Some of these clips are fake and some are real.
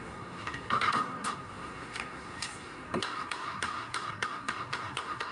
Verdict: fake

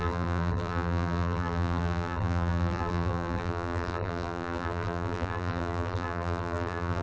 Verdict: fake